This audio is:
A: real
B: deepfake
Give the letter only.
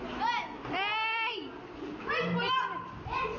A